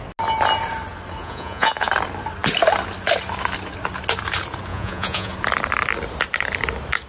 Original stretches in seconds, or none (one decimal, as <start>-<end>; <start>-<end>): 0.0-1.2; 1.9-4.7; 5.3-7.1